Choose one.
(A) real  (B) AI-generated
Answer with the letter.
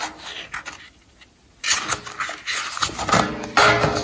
A